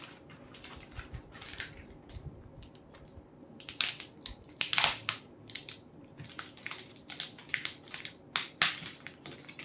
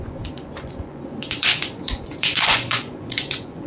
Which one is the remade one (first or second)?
second